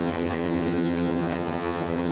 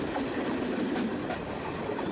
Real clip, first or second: second